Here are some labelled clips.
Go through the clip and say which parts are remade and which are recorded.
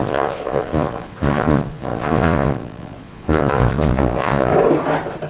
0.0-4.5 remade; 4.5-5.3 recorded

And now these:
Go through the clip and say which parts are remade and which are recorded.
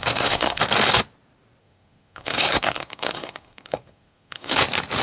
0.0-0.6 remade; 0.6-1.6 recorded; 1.6-4.6 remade; 4.6-5.0 recorded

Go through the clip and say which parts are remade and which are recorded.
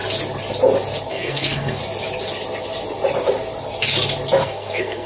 0.0-1.1 recorded; 1.1-1.8 remade; 1.8-4.4 recorded; 4.4-5.1 remade